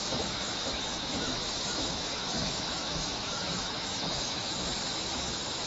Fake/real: fake